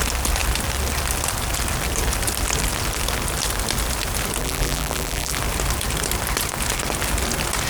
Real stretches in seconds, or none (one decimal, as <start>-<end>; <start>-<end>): 0.0-4.4; 5.4-7.7